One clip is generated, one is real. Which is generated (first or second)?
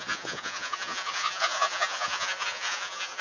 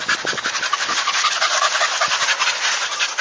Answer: first